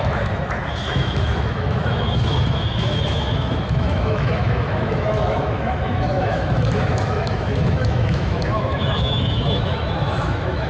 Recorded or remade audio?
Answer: remade